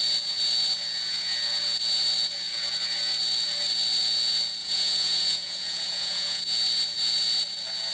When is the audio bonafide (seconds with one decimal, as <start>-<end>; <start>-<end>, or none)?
0.0-4.6; 6.4-7.9